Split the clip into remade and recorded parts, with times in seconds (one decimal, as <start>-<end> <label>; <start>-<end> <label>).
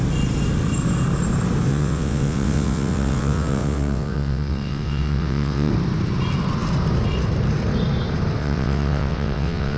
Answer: 0.0-1.7 recorded; 1.7-5.7 remade; 5.7-8.4 recorded; 8.4-9.8 remade